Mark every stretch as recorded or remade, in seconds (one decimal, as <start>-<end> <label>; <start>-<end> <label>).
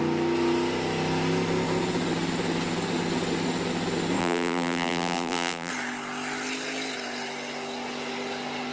0.0-4.2 recorded; 4.2-5.7 remade; 5.7-8.7 recorded